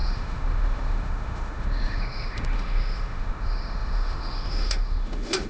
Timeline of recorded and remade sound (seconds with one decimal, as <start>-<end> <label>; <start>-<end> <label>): 0.0-5.5 remade